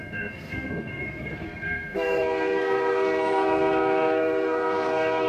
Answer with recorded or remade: remade